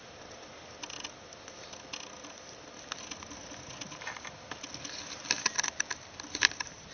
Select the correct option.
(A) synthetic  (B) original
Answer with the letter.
B